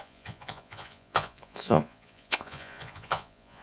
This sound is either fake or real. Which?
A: fake